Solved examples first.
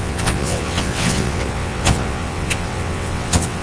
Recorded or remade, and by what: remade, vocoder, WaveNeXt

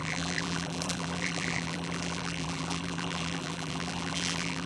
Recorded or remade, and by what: remade, vocoder, BigVGAN v2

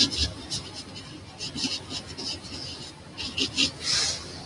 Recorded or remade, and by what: recorded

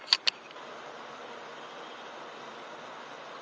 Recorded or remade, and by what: recorded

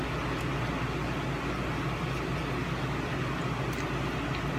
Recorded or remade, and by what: recorded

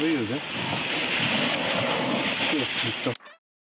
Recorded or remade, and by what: recorded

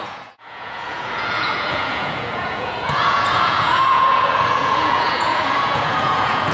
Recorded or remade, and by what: remade, vocoder, Vocos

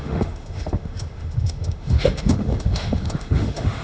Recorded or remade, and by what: remade, autoencoder, DAC-VAE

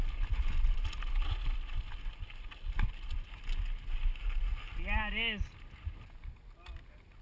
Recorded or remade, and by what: recorded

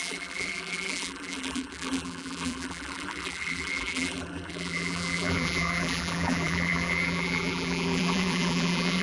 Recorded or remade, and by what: remade, vocoder, BigVGAN v2